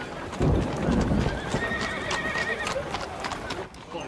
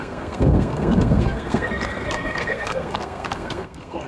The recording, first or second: first